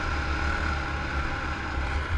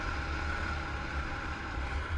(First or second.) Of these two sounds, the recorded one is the first